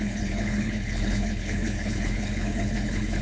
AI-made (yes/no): yes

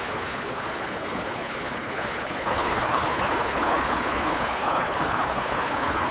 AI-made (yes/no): yes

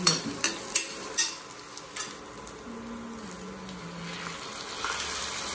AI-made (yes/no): no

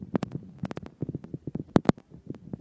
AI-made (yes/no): no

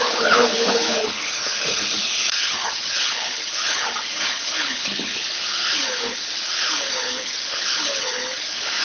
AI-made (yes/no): yes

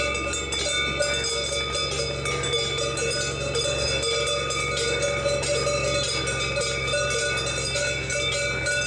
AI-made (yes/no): no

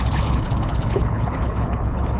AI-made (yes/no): yes